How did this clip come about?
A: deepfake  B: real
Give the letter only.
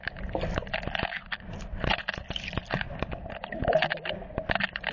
B